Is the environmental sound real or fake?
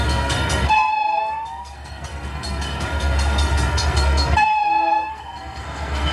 fake